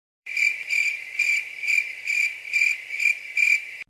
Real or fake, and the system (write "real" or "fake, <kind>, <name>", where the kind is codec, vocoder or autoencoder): fake, vocoder, BigVGAN v2